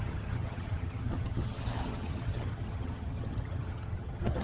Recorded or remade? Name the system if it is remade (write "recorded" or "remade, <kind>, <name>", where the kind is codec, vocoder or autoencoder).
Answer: remade, vocoder, HiFi-GAN